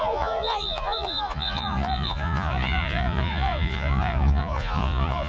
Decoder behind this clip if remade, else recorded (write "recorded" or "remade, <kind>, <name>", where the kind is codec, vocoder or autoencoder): remade, vocoder, Vocos